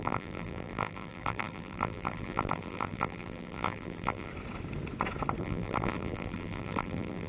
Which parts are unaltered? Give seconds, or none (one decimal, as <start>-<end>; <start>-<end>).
4.3-5.4